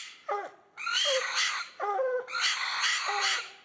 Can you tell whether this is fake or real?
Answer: real